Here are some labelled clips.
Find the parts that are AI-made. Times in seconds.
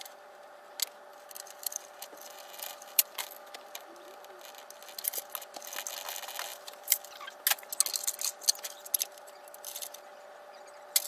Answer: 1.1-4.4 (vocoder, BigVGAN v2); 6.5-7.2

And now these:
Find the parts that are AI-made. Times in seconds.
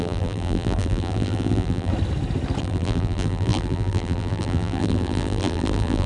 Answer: 0.0-1.9 (vocoder, BigVGAN v2); 2.6-6.1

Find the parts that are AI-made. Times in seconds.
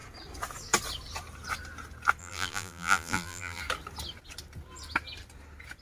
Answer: 2.2-3.6 (vocoder, BigVGAN v2)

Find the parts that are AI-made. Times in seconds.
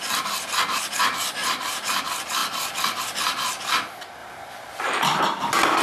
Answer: 1.4-2.0 (vocoder, BigVGAN v2); 4.2-5.2